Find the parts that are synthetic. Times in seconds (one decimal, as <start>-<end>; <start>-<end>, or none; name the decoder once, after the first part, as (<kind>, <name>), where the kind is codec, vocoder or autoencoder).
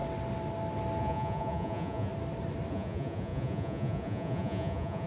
1.0-2.1 (vocoder, Vocos); 2.7-5.1